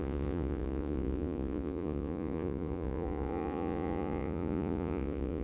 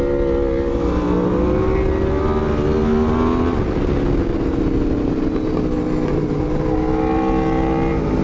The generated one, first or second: first